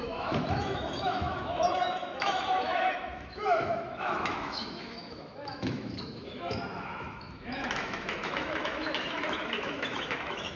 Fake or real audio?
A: fake